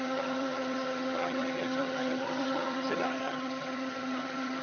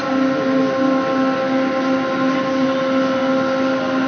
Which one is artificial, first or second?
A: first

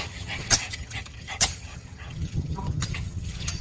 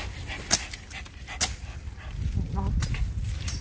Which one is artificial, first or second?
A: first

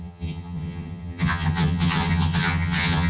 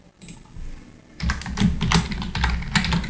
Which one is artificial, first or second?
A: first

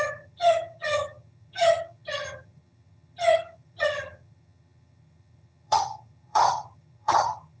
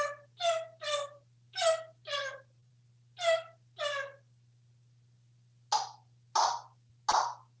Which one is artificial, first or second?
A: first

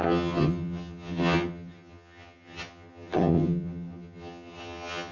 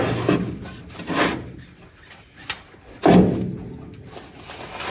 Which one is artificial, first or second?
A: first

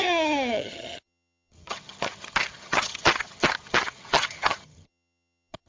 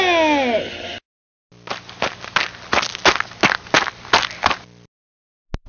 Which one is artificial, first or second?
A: first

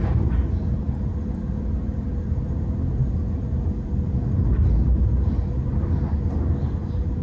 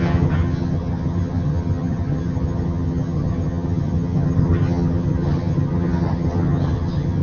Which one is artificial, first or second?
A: second